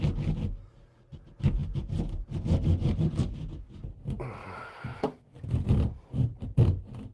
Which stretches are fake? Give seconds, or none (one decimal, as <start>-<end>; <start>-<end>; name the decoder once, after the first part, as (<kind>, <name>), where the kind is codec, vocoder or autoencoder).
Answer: 4.4-5.7 (autoencoder, DAC-VAE)